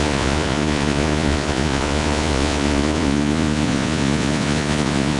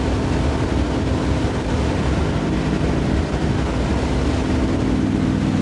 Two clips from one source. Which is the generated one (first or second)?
first